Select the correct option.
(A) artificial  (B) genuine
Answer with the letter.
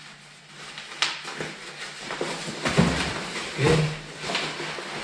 B